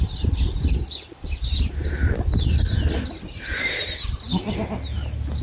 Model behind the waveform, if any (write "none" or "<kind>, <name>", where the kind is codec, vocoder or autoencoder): none